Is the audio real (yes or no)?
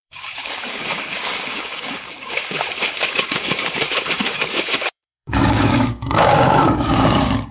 no